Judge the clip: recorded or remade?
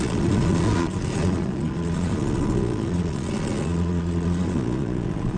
remade